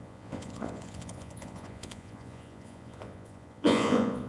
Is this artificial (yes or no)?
yes